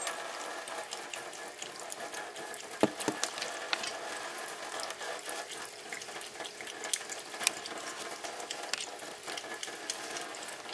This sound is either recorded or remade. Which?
recorded